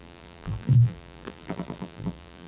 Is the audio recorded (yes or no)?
no